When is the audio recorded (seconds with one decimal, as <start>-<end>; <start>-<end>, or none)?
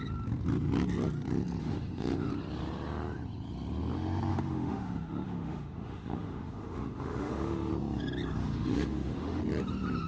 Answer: 0.0-1.6; 2.3-4.3; 7.7-8.4; 9.4-10.1